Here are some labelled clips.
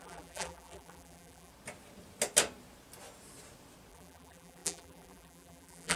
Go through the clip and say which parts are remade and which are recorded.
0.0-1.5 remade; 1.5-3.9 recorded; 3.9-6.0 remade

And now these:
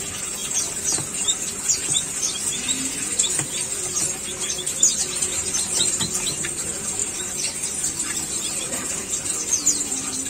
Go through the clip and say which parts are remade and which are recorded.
0.0-7.0 recorded; 7.0-8.9 remade; 8.9-10.3 recorded

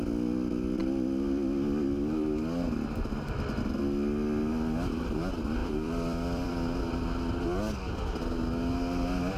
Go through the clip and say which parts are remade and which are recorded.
0.0-5.6 recorded; 5.6-6.5 remade; 6.5-9.4 recorded

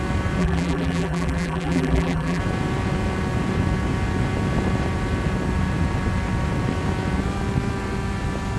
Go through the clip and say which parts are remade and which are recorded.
0.0-0.4 recorded; 0.4-2.4 remade; 2.4-8.6 recorded